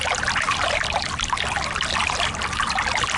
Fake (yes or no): no